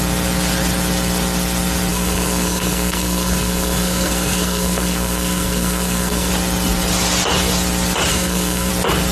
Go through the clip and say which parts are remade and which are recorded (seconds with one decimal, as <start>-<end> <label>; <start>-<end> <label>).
0.0-1.9 recorded; 1.9-6.3 remade; 6.3-8.1 recorded; 8.1-8.7 remade; 8.7-9.1 recorded